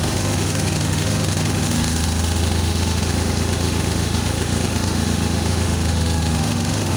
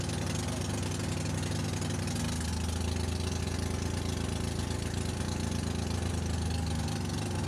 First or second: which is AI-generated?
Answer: first